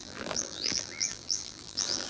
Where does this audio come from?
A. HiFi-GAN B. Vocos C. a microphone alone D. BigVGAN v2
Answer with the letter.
D